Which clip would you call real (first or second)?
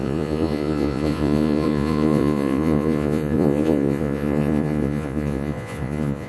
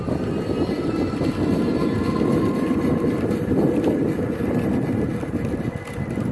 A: second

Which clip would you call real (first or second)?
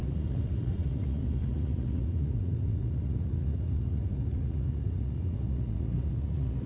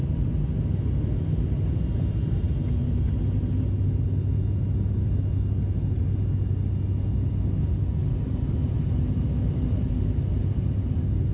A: second